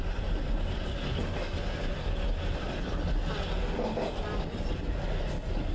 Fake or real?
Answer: real